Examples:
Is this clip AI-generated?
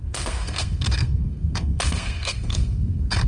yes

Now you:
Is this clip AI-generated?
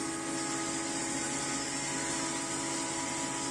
no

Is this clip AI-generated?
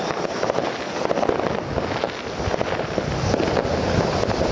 no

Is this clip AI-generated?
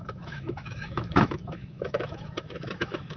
yes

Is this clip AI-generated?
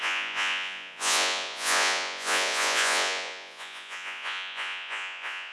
yes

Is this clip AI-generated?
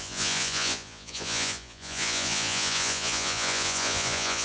yes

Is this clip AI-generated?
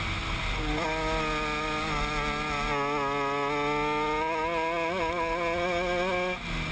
no